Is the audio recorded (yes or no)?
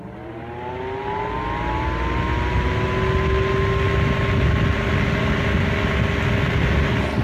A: yes